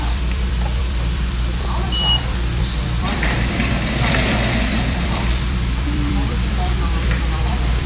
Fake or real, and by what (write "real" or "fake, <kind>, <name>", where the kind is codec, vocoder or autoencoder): fake, vocoder, BigVGAN v2